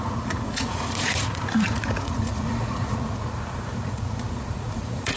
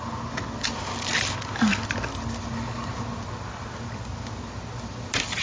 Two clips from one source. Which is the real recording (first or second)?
second